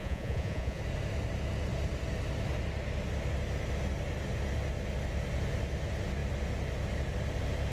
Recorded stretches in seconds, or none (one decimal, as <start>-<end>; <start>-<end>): 0.8-7.7